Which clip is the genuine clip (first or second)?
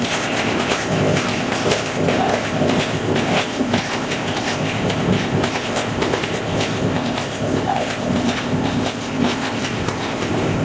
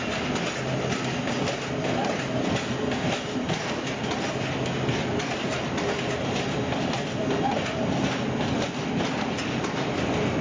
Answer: second